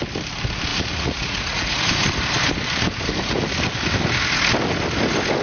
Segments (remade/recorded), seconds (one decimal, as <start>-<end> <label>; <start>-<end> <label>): 0.0-0.7 recorded; 0.7-1.8 remade; 1.8-5.4 recorded